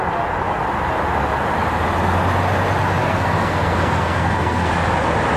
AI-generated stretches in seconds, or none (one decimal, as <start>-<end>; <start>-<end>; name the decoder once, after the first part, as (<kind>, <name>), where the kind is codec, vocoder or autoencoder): 3.0-4.7 (codec, SNAC)